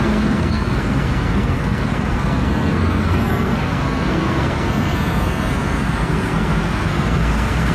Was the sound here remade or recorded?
remade